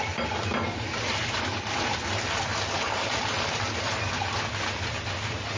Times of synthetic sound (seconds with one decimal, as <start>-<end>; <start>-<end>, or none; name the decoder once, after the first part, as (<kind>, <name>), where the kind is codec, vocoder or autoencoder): none